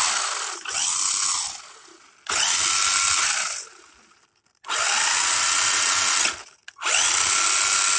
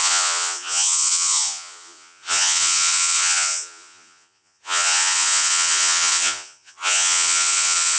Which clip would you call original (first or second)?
first